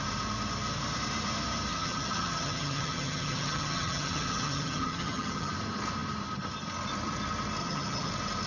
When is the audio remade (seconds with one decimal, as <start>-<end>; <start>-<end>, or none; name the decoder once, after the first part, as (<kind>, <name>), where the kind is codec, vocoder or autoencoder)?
1.7-5.5 (vocoder, HiFi-GAN); 7.6-8.1